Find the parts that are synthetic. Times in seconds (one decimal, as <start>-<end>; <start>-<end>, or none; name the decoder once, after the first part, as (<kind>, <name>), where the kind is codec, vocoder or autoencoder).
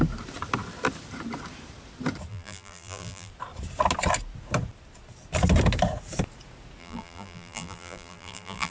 2.3-3.3 (vocoder, BigVGAN v2); 6.8-8.7